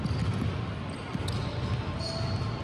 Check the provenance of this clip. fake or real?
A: real